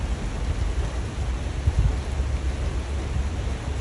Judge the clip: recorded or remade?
recorded